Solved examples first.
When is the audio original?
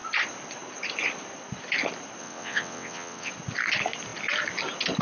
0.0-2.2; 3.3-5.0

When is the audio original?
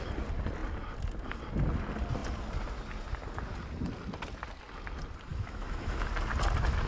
0.0-5.3; 6.1-6.9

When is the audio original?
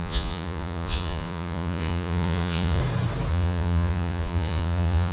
2.8-3.3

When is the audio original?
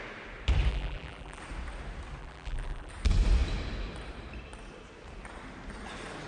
0.0-0.7; 1.4-2.2; 2.9-6.3